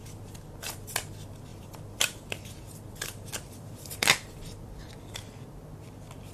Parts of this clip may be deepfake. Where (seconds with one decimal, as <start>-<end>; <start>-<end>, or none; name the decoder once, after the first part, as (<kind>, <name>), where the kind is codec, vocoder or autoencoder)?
1.5-5.3 (vocoder, BigVGAN v2)